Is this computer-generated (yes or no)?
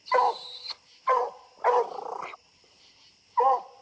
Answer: no